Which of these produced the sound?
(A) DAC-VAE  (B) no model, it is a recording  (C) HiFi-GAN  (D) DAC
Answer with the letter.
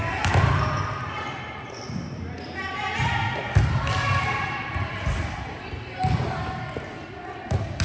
B